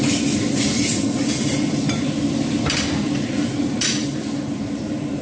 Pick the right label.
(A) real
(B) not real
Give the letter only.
A